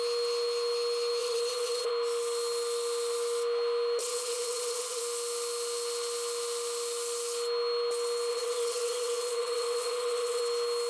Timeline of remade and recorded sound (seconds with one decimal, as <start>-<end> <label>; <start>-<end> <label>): 0.0-1.2 recorded; 1.2-1.9 remade; 1.9-4.0 recorded; 4.0-5.0 remade; 5.0-8.3 recorded; 8.3-10.4 remade; 10.4-10.9 recorded